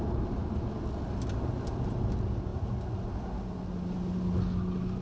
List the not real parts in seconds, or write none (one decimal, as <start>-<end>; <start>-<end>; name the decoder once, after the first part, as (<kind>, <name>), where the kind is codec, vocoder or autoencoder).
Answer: none